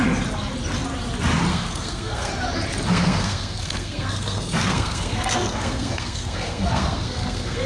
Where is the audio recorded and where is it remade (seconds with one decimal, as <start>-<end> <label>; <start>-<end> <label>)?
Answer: 0.0-1.5 recorded; 1.5-2.3 remade; 2.3-2.9 recorded; 2.9-7.7 remade